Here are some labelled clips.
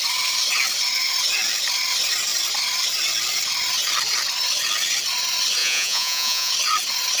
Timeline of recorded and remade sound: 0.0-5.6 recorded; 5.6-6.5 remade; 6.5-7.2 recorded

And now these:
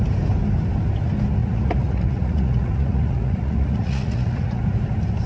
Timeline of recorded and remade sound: 0.0-1.4 recorded; 1.4-4.6 remade; 4.6-5.3 recorded

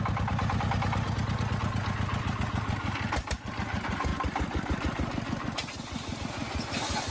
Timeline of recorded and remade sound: 0.0-7.1 recorded

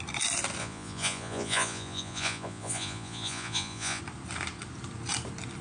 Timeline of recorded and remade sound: 0.0-0.6 recorded; 0.6-4.0 remade; 4.0-5.6 recorded

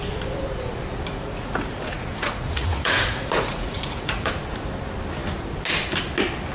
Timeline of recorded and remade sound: 0.0-1.1 recorded; 1.1-4.3 remade; 4.3-6.5 recorded